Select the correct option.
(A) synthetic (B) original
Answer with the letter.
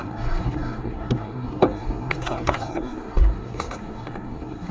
A